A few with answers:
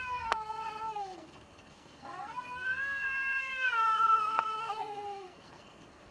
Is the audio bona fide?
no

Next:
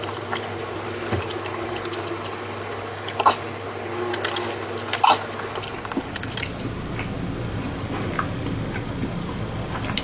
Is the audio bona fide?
yes